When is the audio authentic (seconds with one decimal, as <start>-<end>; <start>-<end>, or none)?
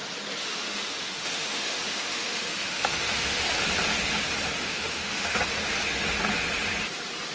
0.0-0.4; 3.4-4.6; 5.4-7.3